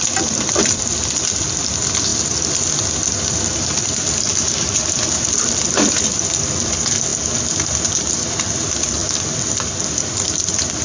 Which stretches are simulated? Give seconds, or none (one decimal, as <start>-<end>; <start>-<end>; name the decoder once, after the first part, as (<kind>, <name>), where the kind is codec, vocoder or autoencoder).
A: 0.0-2.1 (vocoder, BigVGAN v2); 2.8-7.1; 7.9-9.0; 10.1-10.8